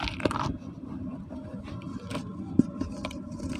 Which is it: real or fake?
real